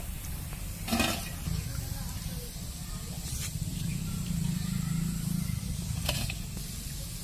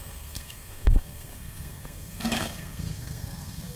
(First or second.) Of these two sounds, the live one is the first